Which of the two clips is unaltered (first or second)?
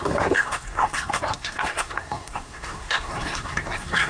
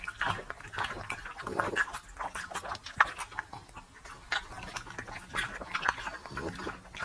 second